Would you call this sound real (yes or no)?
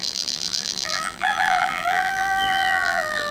no